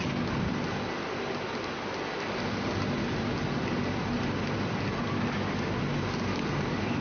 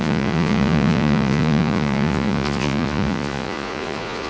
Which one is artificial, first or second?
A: second